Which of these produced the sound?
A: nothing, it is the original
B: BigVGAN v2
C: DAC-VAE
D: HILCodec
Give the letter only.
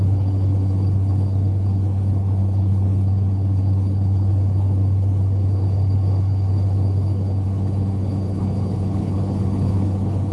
D